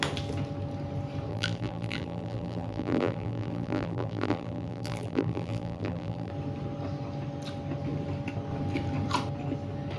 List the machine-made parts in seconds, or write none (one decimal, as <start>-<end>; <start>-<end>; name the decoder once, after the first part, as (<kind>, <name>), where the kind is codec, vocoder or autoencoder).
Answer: 1.3-6.3 (vocoder, BigVGAN v2)